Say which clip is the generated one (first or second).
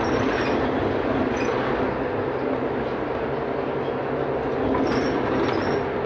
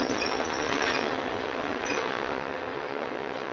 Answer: second